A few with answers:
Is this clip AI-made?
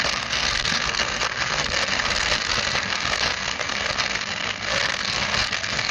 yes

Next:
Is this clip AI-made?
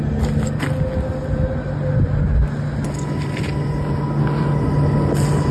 no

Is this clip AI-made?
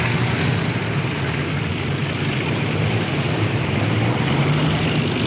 no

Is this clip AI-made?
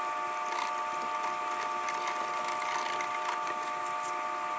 no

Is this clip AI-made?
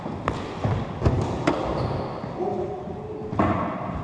no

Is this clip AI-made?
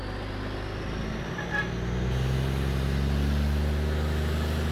no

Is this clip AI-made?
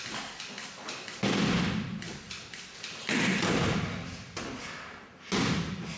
no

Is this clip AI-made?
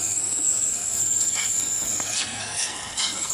yes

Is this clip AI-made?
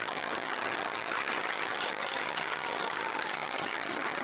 yes